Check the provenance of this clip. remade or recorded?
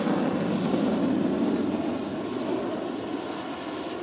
recorded